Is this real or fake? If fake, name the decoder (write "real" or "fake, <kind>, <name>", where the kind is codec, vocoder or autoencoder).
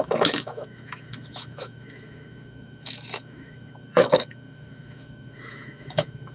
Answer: fake, autoencoder, DAC-VAE